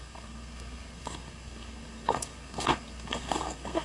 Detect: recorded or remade remade